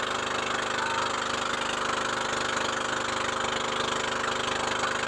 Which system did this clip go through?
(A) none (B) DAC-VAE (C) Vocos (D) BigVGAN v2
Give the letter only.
A